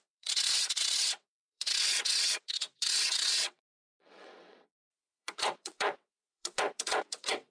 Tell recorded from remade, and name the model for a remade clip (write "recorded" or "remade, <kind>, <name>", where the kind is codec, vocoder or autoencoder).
remade, vocoder, WaveNeXt